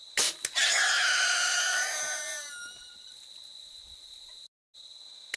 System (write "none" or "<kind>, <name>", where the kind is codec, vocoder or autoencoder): none